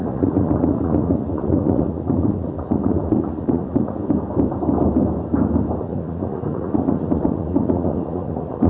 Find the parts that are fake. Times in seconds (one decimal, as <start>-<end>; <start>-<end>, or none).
0.0-4.0; 5.8-8.7